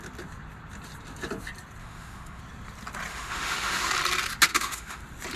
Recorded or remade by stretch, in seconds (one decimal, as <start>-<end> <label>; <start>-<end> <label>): 0.0-1.8 recorded; 1.8-2.4 remade; 2.4-3.1 recorded; 3.1-3.9 remade; 3.9-4.5 recorded; 4.5-5.0 remade; 5.0-5.4 recorded

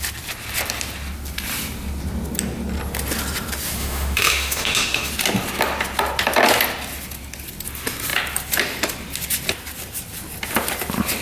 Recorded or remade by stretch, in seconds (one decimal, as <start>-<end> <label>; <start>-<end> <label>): 0.0-3.8 recorded; 3.8-5.1 remade; 5.1-11.2 recorded

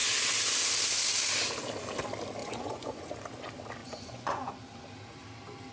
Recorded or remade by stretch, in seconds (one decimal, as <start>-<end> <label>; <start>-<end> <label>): 0.0-2.4 recorded; 2.4-3.1 remade; 3.1-3.8 recorded; 3.8-4.5 remade; 4.5-5.7 recorded

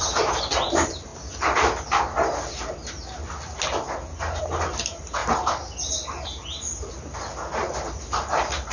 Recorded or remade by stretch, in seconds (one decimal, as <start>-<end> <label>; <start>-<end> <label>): 0.0-8.7 recorded

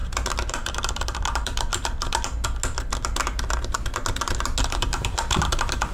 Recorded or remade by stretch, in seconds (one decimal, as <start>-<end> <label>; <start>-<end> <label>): 0.0-0.5 recorded; 0.5-1.7 remade; 1.7-4.6 recorded; 4.6-5.9 remade

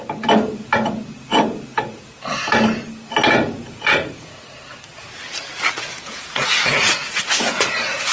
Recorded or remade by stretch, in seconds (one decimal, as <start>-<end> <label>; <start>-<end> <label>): 0.0-3.7 recorded; 3.7-4.4 remade; 4.4-5.8 recorded; 5.8-8.1 remade

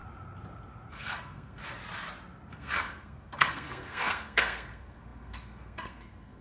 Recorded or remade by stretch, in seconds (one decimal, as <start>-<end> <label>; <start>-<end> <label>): 0.0-0.9 recorded; 0.9-1.6 remade; 1.6-2.5 recorded; 2.5-6.4 remade

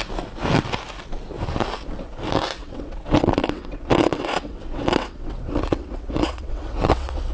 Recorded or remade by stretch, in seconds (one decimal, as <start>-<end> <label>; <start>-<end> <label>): 0.0-2.6 recorded; 2.6-7.3 remade